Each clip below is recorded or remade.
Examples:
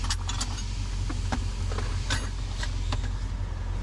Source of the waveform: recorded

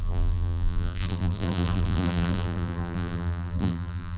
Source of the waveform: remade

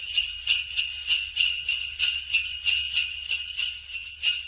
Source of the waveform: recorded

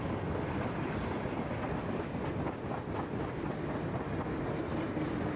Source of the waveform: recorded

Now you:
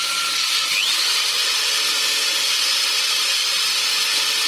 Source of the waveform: recorded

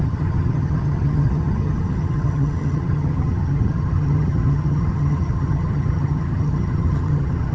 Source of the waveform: remade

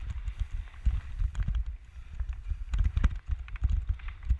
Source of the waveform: remade